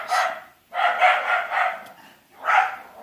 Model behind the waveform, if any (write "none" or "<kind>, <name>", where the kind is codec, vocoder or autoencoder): none